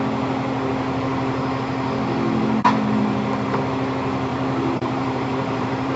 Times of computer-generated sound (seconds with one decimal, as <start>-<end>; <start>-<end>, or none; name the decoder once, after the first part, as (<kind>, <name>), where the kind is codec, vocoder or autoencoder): 4.3-6.0 (vocoder, BigVGAN v2)